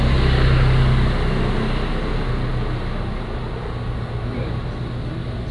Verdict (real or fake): real